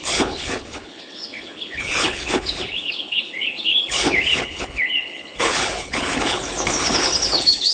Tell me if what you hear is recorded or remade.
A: remade